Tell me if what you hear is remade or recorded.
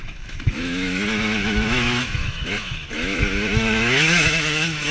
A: remade